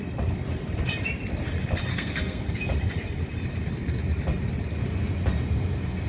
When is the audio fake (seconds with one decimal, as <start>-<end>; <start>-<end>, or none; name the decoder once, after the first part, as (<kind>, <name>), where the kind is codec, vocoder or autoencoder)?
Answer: 1.9-2.4 (codec, SNAC)

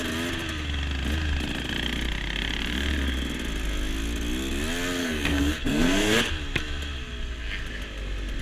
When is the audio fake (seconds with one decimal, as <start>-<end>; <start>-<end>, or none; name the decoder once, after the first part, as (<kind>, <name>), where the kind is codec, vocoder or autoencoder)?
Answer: 5.0-6.3 (codec, SNAC)

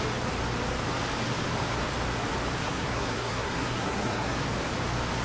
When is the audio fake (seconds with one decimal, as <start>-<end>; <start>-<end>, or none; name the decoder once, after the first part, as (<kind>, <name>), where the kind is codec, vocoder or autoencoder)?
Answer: 2.6-4.4 (codec, SNAC)

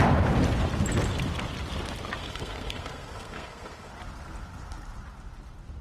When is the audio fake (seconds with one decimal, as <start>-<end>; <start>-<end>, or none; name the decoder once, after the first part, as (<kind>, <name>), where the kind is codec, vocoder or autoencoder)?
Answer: 2.2-3.9 (codec, SNAC)

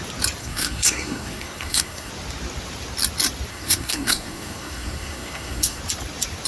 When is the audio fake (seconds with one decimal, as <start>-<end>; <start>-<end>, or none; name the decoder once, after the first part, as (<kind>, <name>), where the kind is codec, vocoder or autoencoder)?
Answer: 0.4-2.1 (codec, SNAC); 3.5-5.8

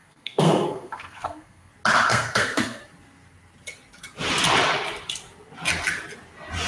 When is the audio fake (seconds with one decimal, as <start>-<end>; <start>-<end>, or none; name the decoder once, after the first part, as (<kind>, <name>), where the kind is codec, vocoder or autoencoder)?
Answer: 0.0-1.7 (codec, SNAC); 2.1-2.8

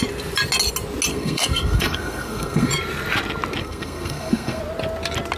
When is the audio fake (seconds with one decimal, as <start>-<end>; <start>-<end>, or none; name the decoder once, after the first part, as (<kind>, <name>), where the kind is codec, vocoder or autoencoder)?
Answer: 1.1-2.7 (codec, SNAC); 3.6-4.6

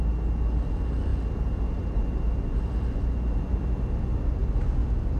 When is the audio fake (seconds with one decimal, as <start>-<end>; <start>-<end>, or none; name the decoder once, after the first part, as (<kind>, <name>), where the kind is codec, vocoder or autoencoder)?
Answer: none